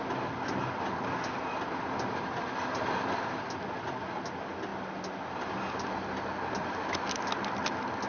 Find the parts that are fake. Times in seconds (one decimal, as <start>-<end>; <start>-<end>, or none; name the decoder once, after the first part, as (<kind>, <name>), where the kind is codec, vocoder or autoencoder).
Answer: none

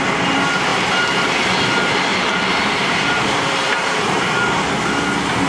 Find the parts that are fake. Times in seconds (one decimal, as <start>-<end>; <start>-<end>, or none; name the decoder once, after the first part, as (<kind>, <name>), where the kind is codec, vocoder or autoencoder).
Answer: 0.7-1.7 (vocoder, BigVGAN v2); 2.1-4.3

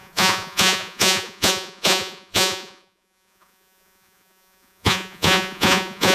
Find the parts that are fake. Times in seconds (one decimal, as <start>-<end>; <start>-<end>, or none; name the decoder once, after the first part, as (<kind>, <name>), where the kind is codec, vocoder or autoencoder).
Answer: 0.0-6.1 (vocoder, Vocos)

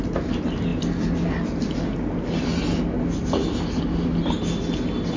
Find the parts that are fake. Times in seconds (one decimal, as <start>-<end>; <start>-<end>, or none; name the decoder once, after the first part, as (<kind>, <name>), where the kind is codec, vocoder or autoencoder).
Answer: none